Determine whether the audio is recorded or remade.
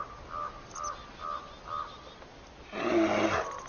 recorded